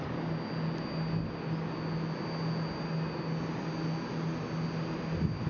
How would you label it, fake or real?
real